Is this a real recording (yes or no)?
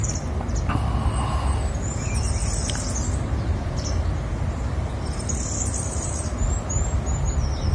yes